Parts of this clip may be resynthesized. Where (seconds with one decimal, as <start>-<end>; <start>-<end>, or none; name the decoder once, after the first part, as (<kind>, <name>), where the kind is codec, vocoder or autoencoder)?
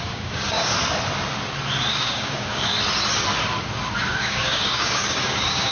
0.0-0.7 (codec, DAC); 1.9-2.7; 4.2-5.7